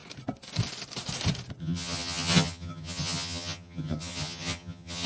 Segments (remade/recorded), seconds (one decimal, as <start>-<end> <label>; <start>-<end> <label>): 0.0-1.6 recorded; 1.6-5.1 remade